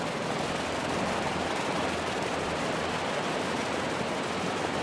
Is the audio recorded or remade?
recorded